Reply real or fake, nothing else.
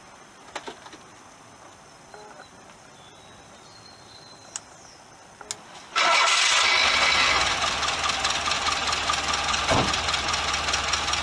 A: real